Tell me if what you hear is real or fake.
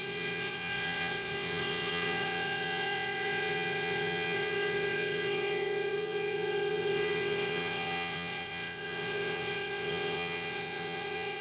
fake